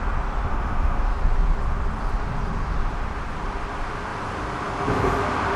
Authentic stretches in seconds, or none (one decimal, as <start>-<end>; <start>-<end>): 0.0-0.5; 1.1-5.6